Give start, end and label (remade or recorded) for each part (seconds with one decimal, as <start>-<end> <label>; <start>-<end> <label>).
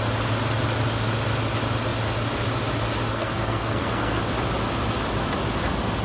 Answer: 0.0-3.1 recorded; 3.1-4.2 remade; 4.2-6.0 recorded